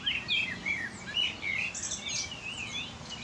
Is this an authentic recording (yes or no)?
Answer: yes